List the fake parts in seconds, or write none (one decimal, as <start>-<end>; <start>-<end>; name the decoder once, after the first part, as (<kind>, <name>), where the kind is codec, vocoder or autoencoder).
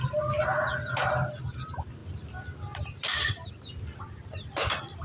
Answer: none